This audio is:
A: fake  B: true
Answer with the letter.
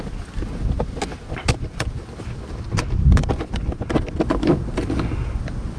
B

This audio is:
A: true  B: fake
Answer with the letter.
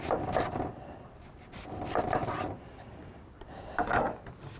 A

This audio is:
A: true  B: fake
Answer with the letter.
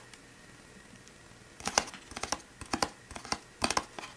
A